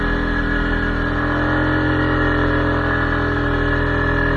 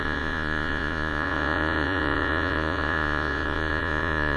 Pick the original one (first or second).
first